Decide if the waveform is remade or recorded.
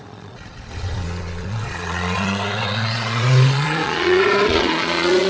remade